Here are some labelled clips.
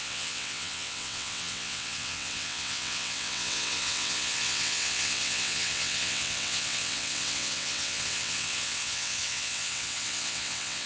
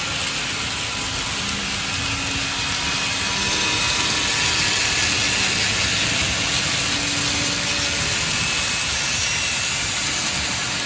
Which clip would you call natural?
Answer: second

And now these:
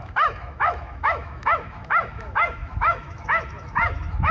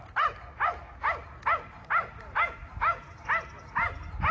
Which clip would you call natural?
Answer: second